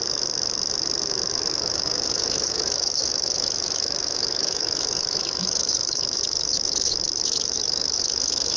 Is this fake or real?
fake